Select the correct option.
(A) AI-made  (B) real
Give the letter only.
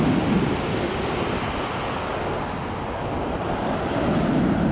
B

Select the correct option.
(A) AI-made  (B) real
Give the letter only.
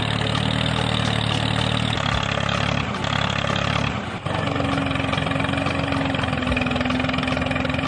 B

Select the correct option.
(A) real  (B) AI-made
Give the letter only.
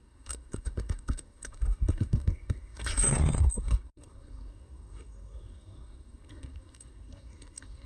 B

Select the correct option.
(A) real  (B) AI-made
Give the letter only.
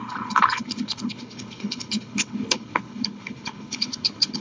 B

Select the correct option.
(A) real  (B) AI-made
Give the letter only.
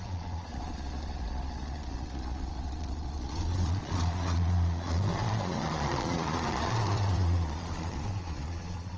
B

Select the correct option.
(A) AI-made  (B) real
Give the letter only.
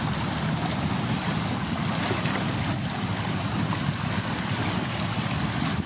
B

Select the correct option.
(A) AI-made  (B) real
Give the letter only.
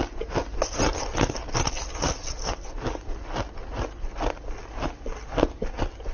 B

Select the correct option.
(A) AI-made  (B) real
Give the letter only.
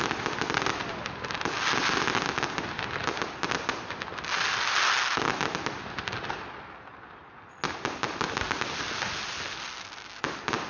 B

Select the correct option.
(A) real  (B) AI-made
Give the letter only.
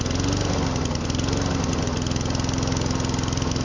A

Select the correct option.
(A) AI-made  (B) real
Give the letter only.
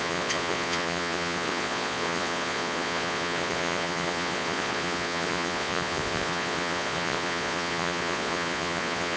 A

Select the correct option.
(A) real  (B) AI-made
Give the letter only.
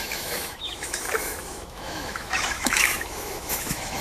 B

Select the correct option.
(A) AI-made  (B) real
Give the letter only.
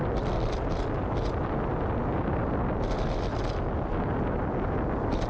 B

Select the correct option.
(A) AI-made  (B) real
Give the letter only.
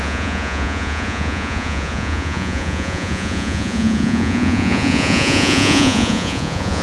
A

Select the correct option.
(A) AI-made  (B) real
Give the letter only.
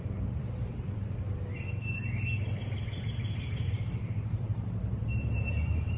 A